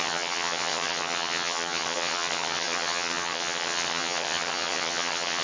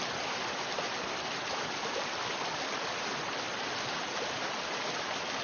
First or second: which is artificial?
first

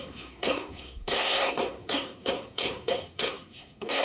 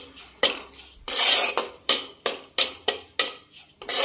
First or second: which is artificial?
first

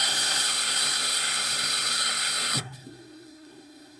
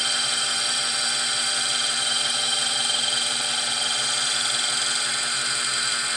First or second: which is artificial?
first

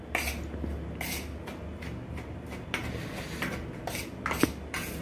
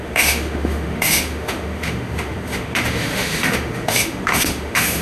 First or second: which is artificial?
second